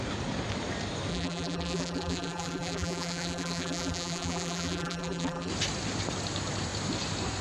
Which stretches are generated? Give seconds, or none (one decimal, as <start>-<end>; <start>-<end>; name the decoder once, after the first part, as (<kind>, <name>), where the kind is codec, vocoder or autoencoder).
1.1-5.5 (vocoder, BigVGAN v2)